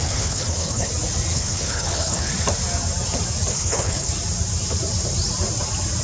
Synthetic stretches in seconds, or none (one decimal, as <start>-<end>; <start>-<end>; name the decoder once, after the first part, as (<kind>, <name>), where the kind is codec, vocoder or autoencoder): 0.0-0.9 (codec, HILCodec); 1.3-2.3; 3.5-4.1